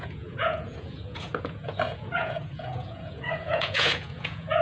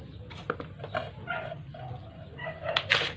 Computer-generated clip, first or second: first